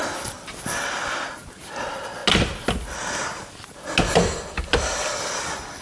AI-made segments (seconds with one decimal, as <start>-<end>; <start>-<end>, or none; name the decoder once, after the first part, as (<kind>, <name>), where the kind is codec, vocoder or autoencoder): none